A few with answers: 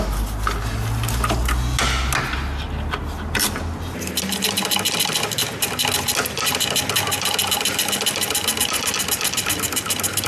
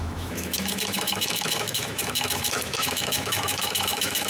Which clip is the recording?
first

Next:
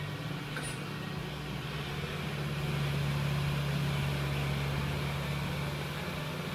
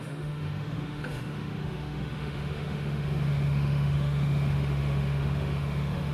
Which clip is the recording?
first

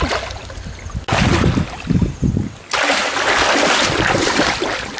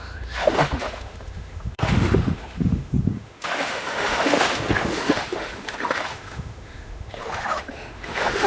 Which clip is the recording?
first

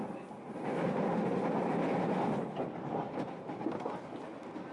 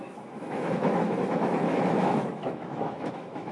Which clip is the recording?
first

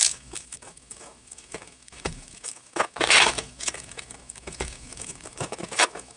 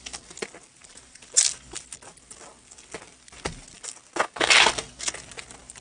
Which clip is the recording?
second